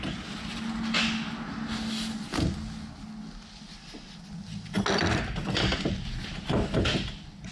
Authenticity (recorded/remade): recorded